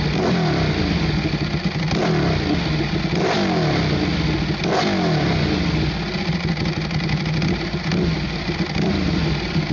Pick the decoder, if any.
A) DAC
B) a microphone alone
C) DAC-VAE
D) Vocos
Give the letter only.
B